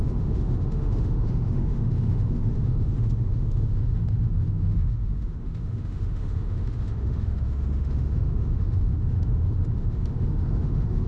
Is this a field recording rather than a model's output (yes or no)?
no